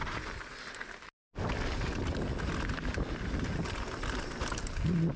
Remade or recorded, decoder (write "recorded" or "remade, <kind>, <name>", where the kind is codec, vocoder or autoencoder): recorded